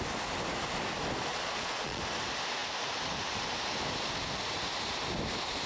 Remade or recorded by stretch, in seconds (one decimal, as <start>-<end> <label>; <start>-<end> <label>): 0.0-1.3 recorded; 1.3-2.0 remade; 2.0-5.7 recorded